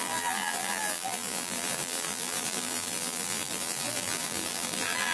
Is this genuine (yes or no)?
no